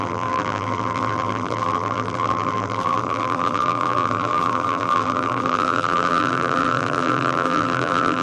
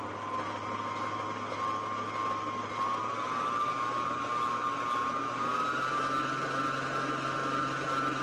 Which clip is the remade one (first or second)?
first